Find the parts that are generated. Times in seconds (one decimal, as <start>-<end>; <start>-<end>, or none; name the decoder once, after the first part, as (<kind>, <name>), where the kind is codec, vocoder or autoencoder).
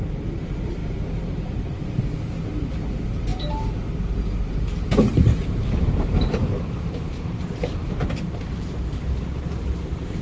0.0-10.2 (vocoder, BigVGAN v2)